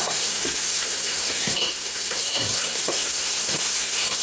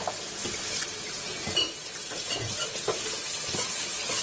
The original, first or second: second